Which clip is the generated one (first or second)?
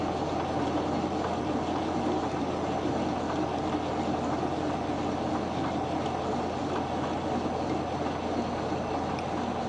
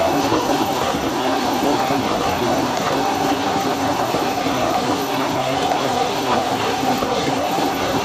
second